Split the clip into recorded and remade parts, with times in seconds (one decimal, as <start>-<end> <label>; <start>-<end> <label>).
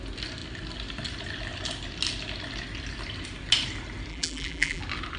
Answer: 0.0-4.1 recorded; 4.1-4.8 remade; 4.8-5.2 recorded